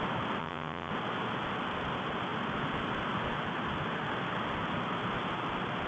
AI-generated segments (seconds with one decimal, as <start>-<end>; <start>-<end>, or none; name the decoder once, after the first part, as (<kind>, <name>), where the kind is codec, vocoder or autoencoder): 0.4-0.9 (vocoder, HiFi-GAN)

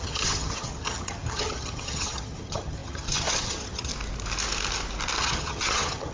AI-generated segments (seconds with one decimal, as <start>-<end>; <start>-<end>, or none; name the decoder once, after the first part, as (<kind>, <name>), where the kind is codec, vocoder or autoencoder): 0.0-3.9 (vocoder, HiFi-GAN); 5.2-6.1

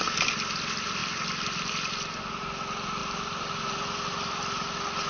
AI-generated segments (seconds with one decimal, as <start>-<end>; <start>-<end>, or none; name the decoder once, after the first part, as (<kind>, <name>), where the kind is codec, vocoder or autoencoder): none

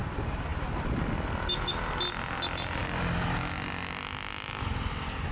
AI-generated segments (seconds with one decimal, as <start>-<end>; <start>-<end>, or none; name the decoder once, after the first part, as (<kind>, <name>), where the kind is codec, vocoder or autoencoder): none

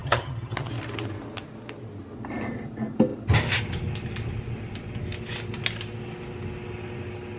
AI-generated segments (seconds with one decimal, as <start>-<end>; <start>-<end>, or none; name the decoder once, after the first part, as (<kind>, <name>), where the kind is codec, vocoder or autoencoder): 0.0-0.7 (vocoder, HiFi-GAN)

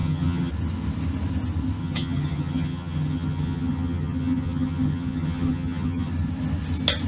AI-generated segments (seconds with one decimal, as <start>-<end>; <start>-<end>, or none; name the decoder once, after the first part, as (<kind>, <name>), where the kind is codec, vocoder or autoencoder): 0.0-0.5 (vocoder, HiFi-GAN); 1.8-6.1

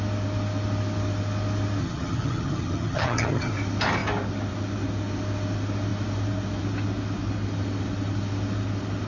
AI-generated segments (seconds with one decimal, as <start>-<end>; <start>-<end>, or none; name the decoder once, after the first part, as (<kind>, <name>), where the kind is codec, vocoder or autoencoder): 1.8-3.5 (vocoder, HiFi-GAN)

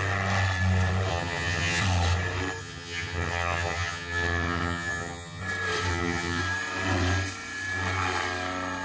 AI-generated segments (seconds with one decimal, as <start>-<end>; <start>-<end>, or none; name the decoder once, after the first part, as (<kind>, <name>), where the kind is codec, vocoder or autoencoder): 1.1-1.8 (vocoder, HiFi-GAN); 2.6-5.4; 5.9-6.4